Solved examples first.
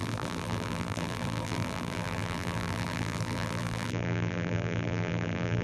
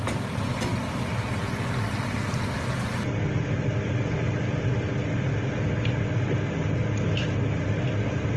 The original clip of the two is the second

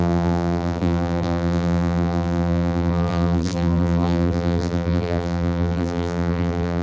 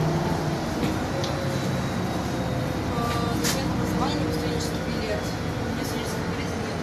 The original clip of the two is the second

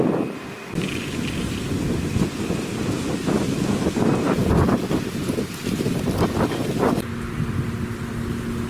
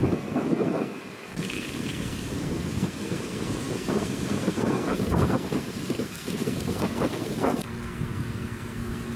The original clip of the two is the first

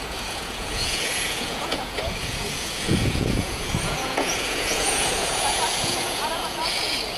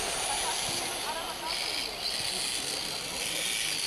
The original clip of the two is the second